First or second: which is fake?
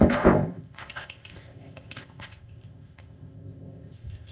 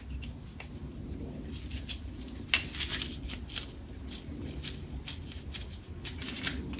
first